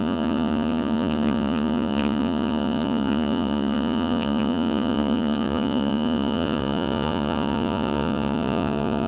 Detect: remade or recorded remade